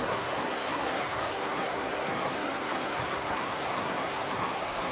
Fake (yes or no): yes